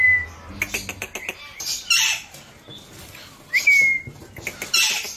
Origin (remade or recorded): recorded